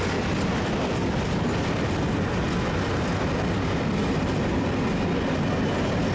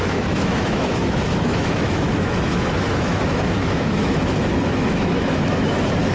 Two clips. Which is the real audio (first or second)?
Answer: first